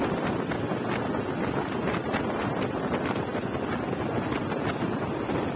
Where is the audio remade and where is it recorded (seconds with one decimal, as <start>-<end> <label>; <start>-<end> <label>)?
0.0-5.6 recorded